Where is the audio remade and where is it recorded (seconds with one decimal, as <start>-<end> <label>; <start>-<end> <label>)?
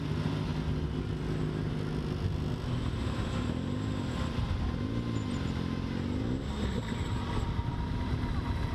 0.0-8.7 recorded